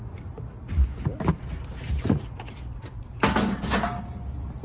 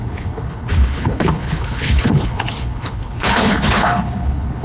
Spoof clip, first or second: second